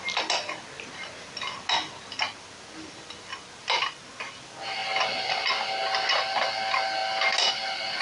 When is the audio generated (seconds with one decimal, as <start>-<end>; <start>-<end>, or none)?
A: none